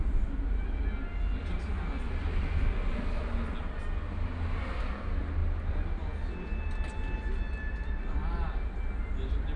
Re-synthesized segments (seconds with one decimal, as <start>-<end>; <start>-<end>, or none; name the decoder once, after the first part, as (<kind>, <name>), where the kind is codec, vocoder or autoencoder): none